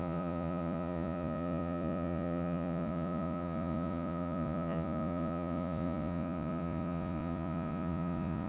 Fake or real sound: fake